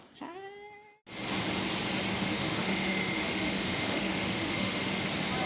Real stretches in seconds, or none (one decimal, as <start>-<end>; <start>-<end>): 0.0-2.2; 4.9-5.5